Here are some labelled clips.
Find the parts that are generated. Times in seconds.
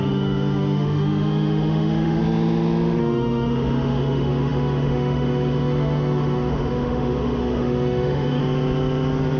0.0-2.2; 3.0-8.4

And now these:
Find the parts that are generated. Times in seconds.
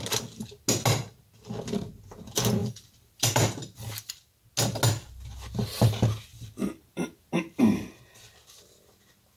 2.6-4.1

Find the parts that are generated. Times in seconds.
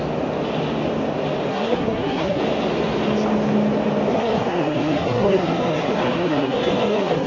1.5-2.4; 4.1-7.3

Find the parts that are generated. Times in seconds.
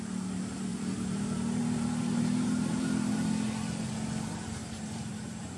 0.7-3.3; 4.6-5.6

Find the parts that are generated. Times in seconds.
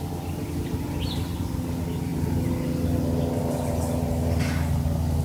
none